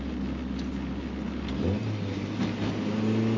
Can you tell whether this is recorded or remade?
recorded